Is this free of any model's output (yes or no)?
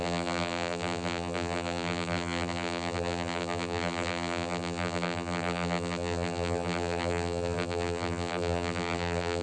no